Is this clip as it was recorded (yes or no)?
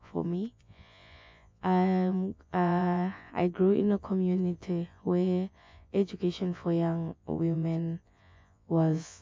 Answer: no